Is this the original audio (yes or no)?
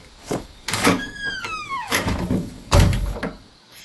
no